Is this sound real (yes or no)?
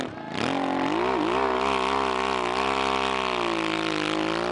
yes